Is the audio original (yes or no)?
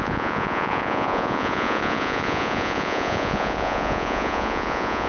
no